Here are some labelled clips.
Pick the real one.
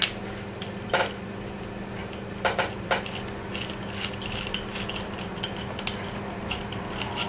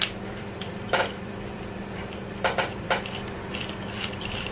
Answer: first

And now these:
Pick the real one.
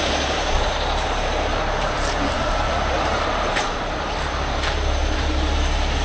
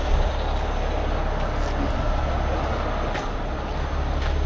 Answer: second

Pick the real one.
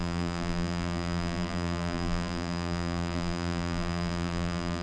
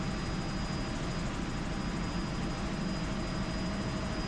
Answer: second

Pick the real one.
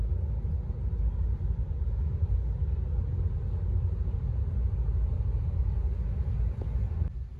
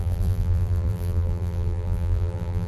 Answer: first